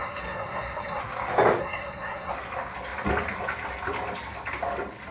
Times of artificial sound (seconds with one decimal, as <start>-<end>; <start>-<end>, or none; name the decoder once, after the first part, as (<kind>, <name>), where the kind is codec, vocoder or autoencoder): 0.0-1.0 (codec, SNAC); 1.6-2.3